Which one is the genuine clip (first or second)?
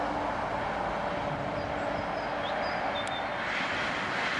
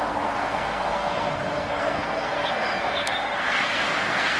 first